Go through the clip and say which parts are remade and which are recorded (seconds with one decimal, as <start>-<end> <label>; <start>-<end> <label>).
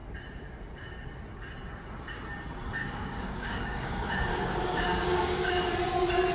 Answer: 0.0-2.8 recorded; 2.8-5.7 remade; 5.7-6.3 recorded